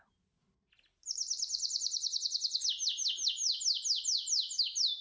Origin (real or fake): real